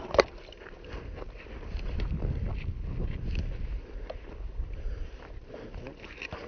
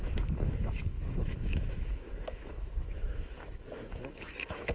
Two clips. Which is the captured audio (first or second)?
first